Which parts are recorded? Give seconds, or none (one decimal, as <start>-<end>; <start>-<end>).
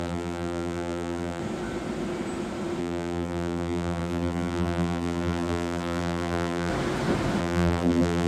1.4-2.8; 6.7-7.4